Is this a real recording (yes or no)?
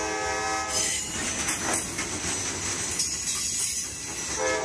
yes